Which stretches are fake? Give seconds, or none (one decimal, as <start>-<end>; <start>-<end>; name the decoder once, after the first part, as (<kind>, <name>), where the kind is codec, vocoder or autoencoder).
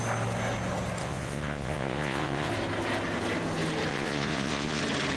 1.0-2.5 (vocoder, Vocos); 3.9-4.8